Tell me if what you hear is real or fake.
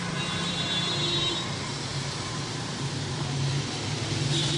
fake